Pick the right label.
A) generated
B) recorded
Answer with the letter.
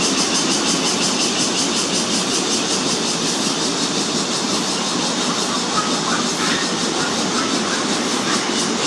B